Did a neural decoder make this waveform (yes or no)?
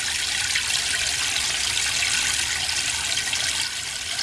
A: no